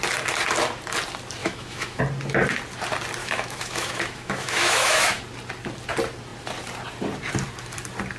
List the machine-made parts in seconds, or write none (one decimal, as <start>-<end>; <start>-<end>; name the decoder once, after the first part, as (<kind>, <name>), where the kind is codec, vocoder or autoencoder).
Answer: 1.4-2.0 (autoencoder, DAC-VAE); 3.2-5.2

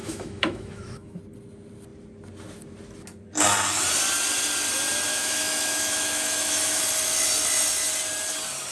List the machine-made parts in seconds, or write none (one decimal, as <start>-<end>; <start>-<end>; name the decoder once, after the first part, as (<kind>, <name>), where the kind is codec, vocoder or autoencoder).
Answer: 0.0-1.2 (autoencoder, DAC-VAE); 5.1-6.8